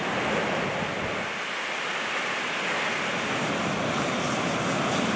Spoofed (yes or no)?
no